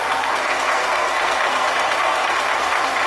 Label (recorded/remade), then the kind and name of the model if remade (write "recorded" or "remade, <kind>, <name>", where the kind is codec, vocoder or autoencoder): remade, codec, SNAC